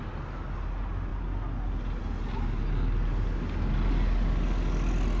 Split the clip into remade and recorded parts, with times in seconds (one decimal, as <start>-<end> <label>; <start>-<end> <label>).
0.0-5.2 recorded